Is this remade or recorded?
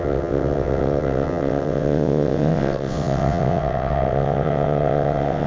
remade